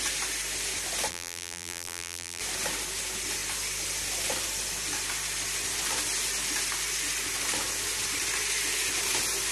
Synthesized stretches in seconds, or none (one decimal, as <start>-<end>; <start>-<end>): 1.1-2.4